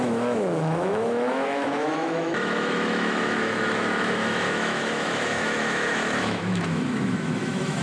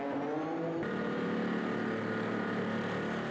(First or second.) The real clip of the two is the second